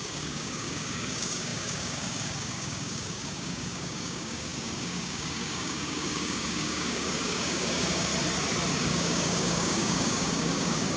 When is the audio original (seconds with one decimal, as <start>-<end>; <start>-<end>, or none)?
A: 8.1-8.7